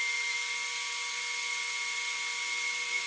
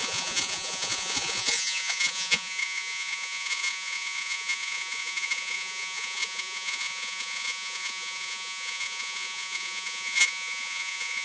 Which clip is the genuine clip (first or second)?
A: first